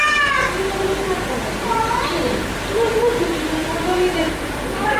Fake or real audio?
fake